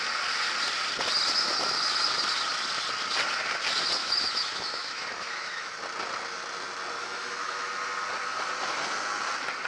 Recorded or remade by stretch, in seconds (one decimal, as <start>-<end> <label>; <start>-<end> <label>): 0.0-4.0 recorded; 4.0-5.8 remade; 5.8-7.0 recorded; 7.0-7.7 remade; 7.7-9.7 recorded